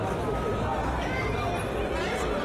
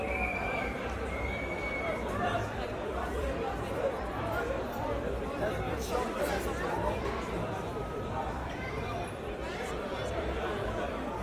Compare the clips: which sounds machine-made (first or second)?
second